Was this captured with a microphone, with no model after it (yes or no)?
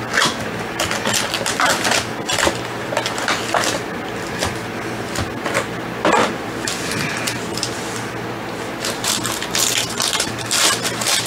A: yes